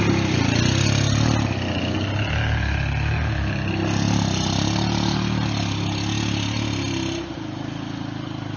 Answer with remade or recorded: recorded